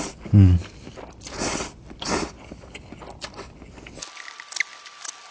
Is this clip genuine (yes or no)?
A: yes